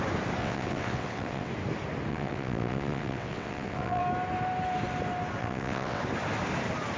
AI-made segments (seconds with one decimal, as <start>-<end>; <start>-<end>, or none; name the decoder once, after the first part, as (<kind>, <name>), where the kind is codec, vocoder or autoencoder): 0.4-1.5 (vocoder, WaveNeXt); 2.1-4.0; 5.4-6.0